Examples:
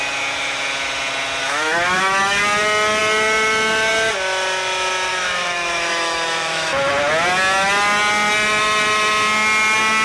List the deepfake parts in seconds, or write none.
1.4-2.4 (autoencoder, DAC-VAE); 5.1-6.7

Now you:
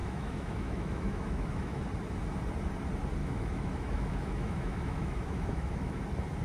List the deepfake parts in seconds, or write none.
0.0-1.8 (autoencoder, DAC-VAE); 3.2-6.0

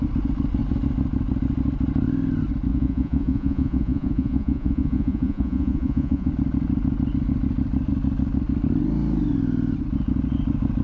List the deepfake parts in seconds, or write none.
2.7-6.3 (vocoder, Vocos)

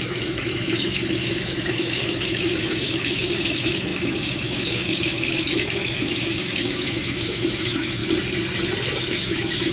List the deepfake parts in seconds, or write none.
0.0-8.0 (autoencoder, DAC-VAE); 9.0-9.7

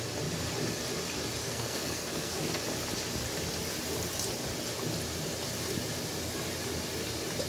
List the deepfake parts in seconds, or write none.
1.4-2.6 (codec, SNAC)